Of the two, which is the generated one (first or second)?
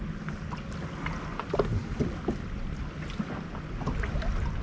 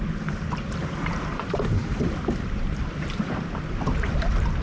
second